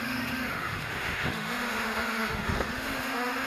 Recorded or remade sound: remade